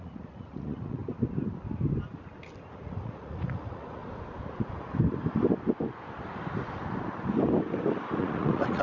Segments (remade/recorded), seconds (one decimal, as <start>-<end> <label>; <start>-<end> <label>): 0.0-1.0 remade; 1.0-2.7 recorded; 2.7-4.0 remade; 4.0-8.2 recorded; 8.2-8.8 remade